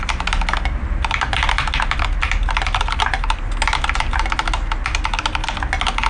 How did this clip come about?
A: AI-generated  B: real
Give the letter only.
B